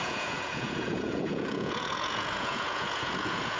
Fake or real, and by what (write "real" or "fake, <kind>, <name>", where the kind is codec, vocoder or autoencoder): fake, vocoder, Vocos